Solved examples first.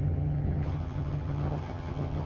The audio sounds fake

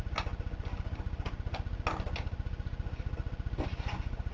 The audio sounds real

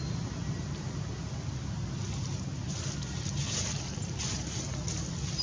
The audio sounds real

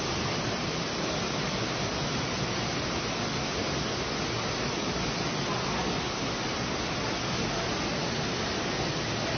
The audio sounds real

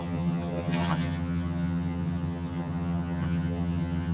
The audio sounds fake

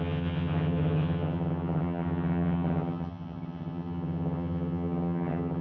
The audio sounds fake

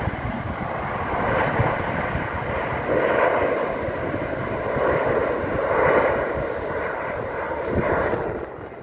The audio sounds real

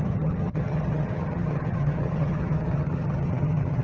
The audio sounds fake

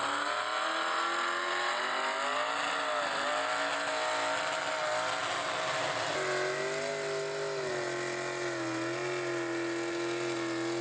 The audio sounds real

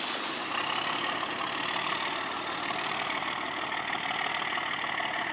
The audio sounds real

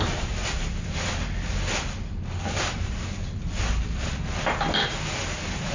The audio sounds real